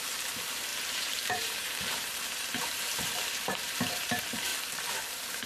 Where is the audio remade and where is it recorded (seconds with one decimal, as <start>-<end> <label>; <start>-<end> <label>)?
0.0-4.5 remade; 4.5-5.1 recorded; 5.1-5.5 remade